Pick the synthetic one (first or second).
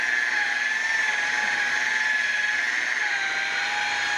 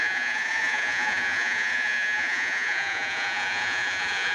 second